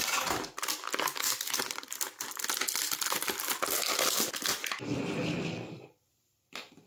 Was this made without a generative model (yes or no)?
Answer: yes